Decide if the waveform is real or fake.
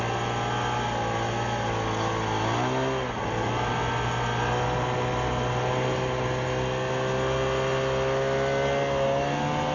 real